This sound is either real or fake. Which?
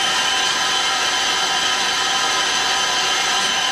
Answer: real